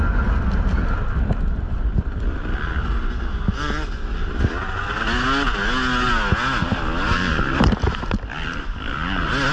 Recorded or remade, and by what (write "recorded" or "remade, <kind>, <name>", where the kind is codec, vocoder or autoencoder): recorded